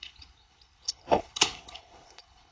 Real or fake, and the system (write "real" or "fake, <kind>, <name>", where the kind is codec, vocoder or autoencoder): fake, codec, HILCodec